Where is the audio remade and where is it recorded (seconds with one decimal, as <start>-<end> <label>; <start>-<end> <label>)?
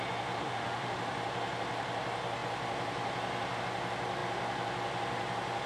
0.0-0.4 recorded; 0.4-1.0 remade; 1.0-5.7 recorded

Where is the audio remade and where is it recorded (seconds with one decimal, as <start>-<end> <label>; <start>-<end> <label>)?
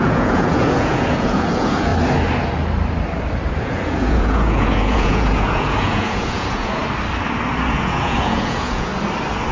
0.0-1.9 remade; 1.9-3.6 recorded; 3.6-6.8 remade; 6.8-7.7 recorded; 7.7-8.9 remade; 8.9-9.5 recorded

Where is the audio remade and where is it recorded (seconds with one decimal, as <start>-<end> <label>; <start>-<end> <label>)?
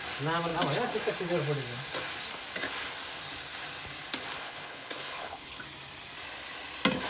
0.0-4.4 recorded; 4.4-5.6 remade; 5.6-7.1 recorded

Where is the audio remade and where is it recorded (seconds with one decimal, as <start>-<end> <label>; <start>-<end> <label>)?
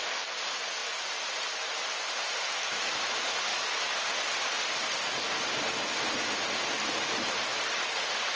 0.0-0.8 recorded; 0.8-2.0 remade; 2.0-8.4 recorded